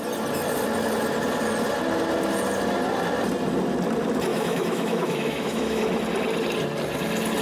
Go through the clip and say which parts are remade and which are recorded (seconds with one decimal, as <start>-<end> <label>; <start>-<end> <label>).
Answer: 0.0-4.3 recorded; 4.3-5.8 remade; 5.8-7.4 recorded